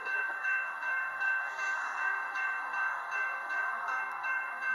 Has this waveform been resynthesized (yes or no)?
yes